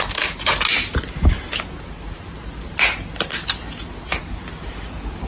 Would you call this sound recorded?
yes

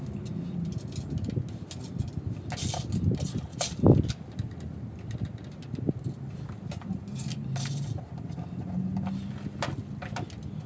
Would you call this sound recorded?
yes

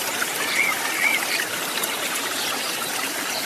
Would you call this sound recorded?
no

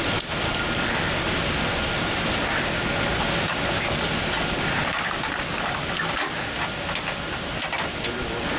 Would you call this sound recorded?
yes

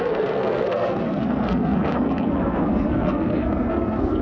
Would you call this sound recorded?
no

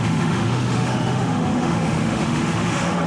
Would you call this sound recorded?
no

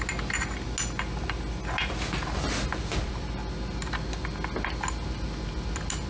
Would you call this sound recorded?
yes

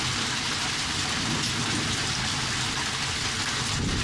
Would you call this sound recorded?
yes